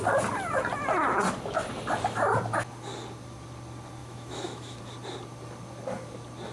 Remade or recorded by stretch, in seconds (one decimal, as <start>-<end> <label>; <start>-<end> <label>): 0.0-4.0 recorded; 4.0-4.8 remade; 4.8-6.5 recorded